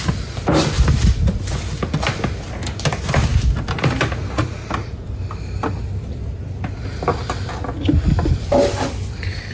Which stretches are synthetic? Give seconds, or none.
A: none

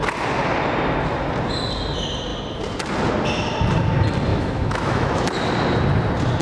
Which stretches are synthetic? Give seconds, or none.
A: 4.3-5.2 (autoencoder, DAC-VAE)

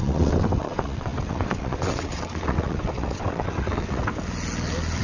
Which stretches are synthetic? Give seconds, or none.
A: 0.0-4.1 (vocoder, WaveNeXt)